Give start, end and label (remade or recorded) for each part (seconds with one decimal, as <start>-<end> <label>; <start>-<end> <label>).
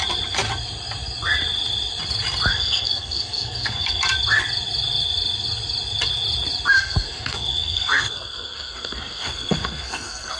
0.0-2.5 recorded; 2.5-4.0 remade; 4.0-6.7 recorded; 6.7-10.4 remade